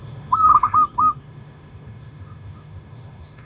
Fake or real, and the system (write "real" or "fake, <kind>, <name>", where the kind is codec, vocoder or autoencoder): fake, autoencoder, DAC-VAE